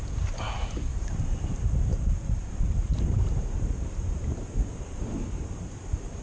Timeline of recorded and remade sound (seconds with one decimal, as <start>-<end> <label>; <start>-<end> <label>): 0.0-0.9 recorded; 0.9-1.5 remade; 1.5-1.9 recorded; 1.9-2.5 remade; 2.5-2.9 recorded; 2.9-6.2 remade